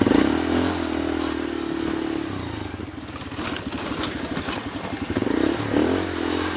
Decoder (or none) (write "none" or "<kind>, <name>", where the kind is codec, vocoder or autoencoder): none